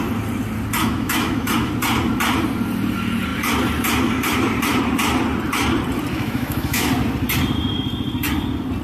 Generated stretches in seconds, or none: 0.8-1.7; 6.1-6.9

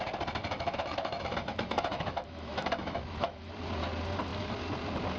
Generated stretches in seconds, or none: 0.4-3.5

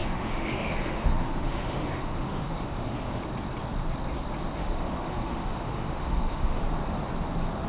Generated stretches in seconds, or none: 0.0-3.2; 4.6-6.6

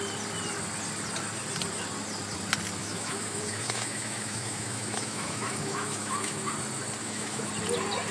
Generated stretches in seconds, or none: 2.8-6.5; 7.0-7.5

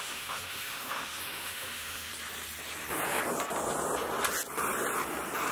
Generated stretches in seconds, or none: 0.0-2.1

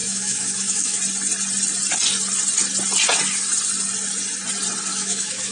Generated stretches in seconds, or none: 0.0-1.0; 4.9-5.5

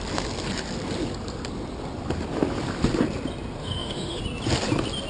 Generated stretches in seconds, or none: 3.6-4.2